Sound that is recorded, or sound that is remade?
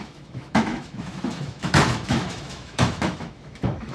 remade